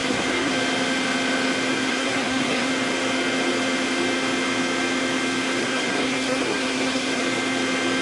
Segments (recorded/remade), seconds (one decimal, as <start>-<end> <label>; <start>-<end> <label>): 0.0-0.5 remade; 0.5-1.7 recorded; 1.7-2.7 remade; 2.7-5.6 recorded; 5.6-7.2 remade; 7.2-8.0 recorded